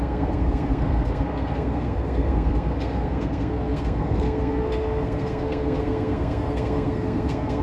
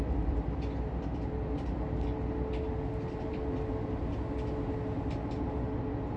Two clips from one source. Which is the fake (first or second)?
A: first